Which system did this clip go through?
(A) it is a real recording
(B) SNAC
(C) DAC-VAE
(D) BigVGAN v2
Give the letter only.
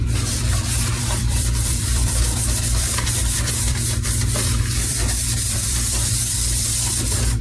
D